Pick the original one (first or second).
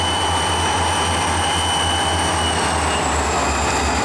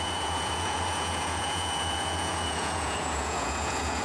first